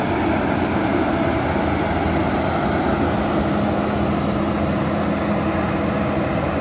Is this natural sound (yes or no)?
yes